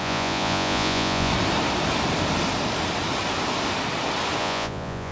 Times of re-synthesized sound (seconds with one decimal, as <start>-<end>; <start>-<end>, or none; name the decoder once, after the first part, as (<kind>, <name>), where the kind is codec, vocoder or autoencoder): 0.0-1.3 (vocoder, Vocos); 4.4-5.1